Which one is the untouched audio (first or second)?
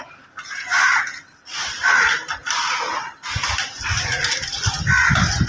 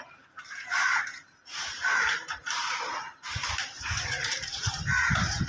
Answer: first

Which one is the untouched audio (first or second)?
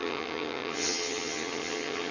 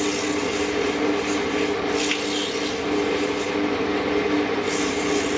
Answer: second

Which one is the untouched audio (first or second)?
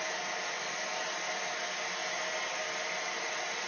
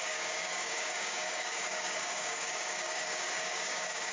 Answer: first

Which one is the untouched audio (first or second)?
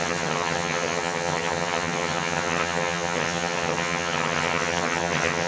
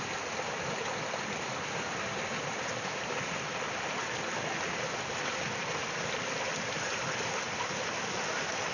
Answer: second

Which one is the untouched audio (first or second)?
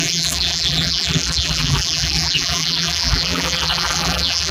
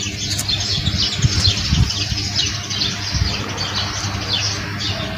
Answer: second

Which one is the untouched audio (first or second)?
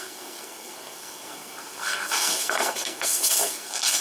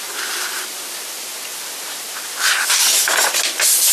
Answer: second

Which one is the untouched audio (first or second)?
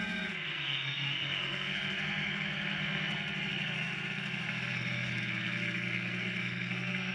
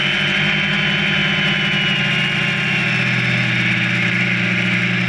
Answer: second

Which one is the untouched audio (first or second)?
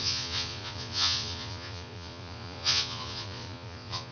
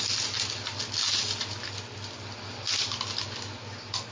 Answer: second